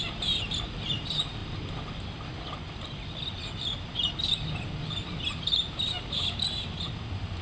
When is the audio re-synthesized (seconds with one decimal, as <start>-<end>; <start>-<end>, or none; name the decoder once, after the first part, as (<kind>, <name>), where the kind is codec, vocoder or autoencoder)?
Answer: none